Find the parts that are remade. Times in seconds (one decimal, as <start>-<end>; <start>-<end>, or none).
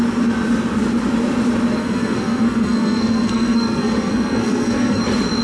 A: 1.8-5.0